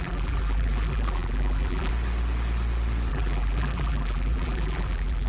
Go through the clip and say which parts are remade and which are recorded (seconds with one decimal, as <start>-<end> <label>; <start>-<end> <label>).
0.0-1.9 remade; 1.9-3.1 recorded; 3.1-5.3 remade